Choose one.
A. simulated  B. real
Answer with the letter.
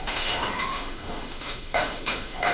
A